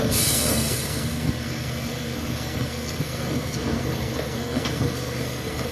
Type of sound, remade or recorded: remade